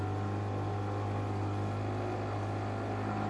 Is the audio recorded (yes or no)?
yes